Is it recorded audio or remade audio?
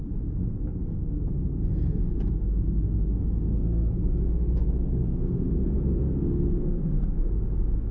remade